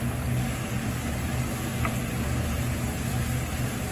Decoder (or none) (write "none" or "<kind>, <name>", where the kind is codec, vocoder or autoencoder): none